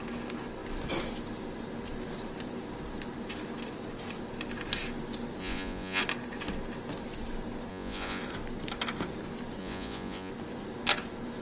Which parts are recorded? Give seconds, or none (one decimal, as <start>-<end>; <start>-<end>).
0.0-5.4; 6.0-7.7; 8.2-9.6; 10.3-11.4